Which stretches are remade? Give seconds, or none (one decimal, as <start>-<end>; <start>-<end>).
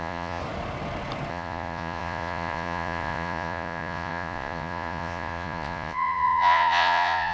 0.0-0.4; 1.3-7.3